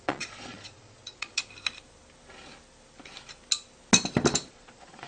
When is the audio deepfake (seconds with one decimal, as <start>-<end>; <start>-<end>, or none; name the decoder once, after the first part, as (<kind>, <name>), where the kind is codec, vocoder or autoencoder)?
0.0-1.4 (vocoder, Vocos); 4.5-5.1